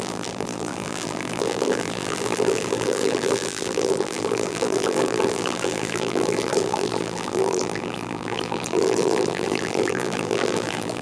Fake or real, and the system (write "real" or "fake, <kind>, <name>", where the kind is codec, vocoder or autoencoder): fake, vocoder, BigVGAN v2